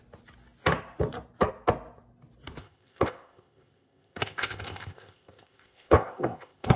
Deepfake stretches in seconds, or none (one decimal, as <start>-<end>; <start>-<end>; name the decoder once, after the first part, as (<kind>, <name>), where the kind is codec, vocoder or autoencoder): 2.6-6.8 (codec, ZipCodec)